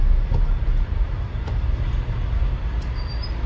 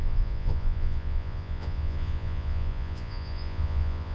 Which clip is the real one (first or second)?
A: first